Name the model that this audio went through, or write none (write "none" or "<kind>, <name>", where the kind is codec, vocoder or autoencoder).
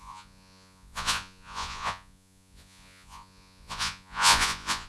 vocoder, Vocos